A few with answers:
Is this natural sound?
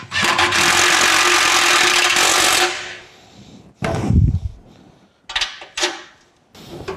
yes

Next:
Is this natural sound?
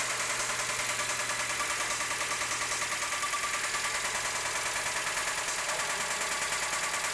yes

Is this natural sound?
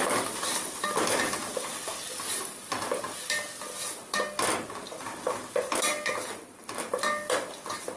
yes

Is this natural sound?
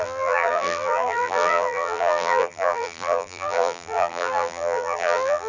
no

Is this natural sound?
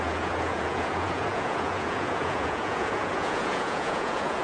no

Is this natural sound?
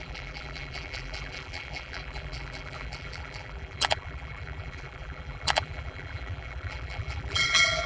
no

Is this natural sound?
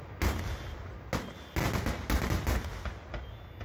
yes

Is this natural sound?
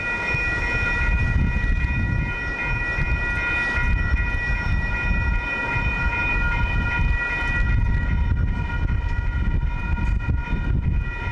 yes